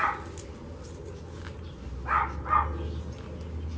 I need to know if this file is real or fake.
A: real